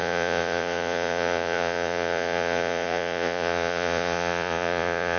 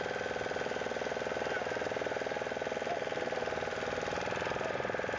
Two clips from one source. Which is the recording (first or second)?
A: second